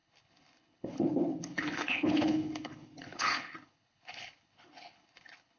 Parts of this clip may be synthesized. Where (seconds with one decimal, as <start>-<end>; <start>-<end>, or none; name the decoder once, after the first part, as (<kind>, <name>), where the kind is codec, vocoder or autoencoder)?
0.0-5.6 (codec, HILCodec)